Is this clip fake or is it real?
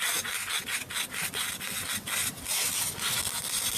real